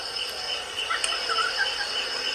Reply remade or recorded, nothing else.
recorded